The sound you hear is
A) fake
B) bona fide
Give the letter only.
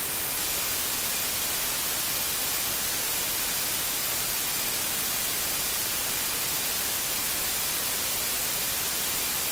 B